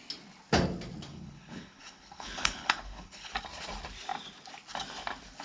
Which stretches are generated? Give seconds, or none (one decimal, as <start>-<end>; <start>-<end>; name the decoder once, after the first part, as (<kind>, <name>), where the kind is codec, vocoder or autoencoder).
1.1-3.3 (codec, HILCodec)